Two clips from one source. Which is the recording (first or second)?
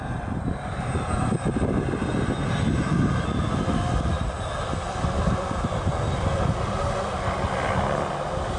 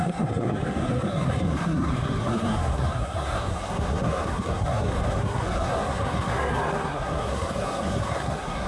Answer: first